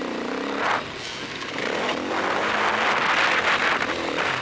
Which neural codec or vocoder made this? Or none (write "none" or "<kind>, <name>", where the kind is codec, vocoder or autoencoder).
none